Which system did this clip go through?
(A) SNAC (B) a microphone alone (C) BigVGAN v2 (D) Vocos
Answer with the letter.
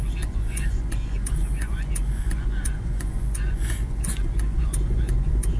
D